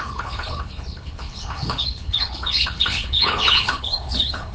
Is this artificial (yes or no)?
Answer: yes